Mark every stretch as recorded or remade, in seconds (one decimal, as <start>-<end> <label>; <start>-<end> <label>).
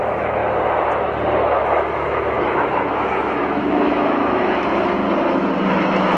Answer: 0.0-0.4 remade; 0.4-1.4 recorded; 1.4-5.0 remade; 5.0-5.7 recorded; 5.7-6.2 remade